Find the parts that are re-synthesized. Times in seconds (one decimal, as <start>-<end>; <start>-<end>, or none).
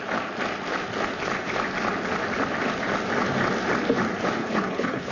4.4-5.1